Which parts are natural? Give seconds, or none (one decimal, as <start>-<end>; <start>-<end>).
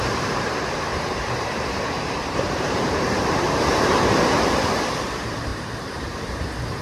none